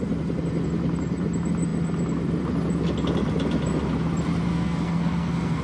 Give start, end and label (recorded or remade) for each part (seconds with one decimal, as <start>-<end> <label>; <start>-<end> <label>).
0.0-4.5 recorded; 4.5-5.6 remade